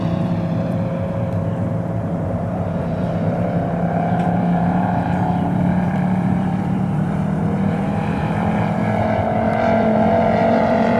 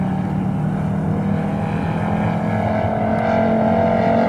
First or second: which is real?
second